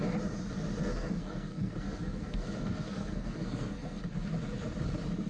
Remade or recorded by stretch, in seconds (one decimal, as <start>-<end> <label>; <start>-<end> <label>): 0.0-0.8 recorded; 0.8-4.0 remade; 4.0-5.3 recorded